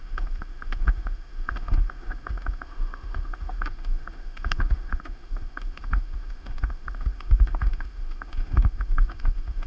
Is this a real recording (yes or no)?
no